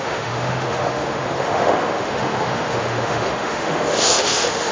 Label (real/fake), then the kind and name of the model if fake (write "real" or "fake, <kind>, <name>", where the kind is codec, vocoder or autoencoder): fake, autoencoder, DAC-VAE